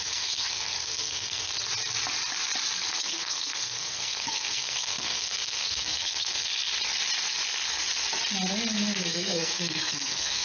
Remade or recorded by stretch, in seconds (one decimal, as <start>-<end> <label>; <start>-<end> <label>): 0.0-1.5 remade; 1.5-3.0 recorded; 3.0-6.5 remade; 6.5-9.0 recorded; 9.0-10.4 remade